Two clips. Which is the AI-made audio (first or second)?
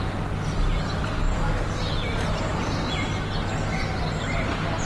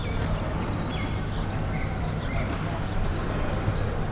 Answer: second